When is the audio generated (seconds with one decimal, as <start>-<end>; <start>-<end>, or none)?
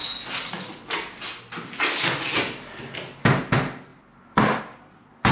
3.9-4.6